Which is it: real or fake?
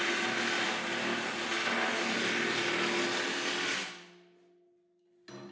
real